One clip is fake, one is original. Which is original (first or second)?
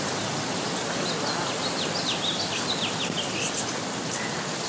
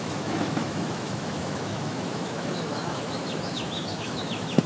first